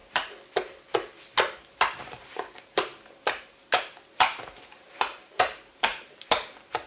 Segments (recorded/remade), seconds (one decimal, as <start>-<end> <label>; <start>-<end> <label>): 0.0-1.6 recorded; 1.6-2.9 remade; 2.9-4.1 recorded; 4.1-6.9 remade